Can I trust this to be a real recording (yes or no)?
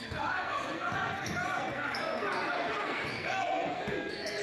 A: no